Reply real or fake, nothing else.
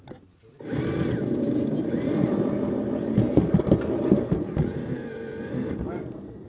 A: real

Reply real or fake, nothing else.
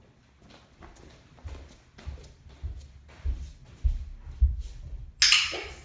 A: real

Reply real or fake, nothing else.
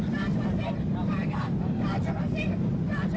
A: real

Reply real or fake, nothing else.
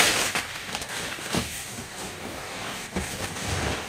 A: fake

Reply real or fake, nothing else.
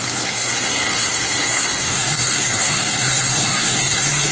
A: fake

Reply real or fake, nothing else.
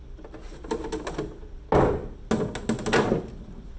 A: real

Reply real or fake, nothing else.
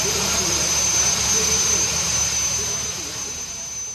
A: fake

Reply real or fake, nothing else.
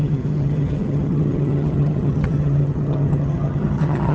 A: fake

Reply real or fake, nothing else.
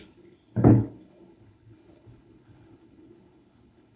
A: fake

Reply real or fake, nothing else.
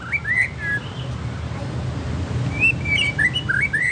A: real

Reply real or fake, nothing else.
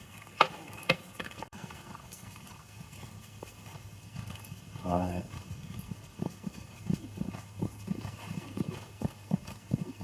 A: fake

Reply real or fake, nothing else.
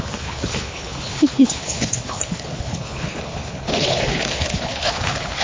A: fake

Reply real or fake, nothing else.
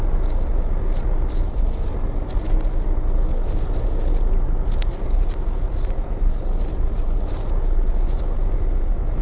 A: real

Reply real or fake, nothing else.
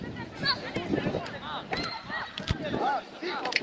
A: real